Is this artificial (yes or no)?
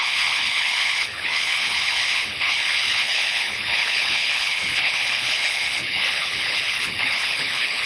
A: yes